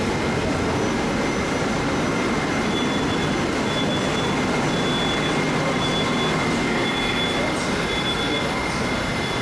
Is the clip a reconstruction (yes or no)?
no